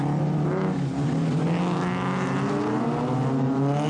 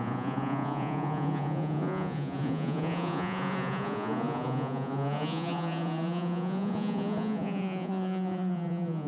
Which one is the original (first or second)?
first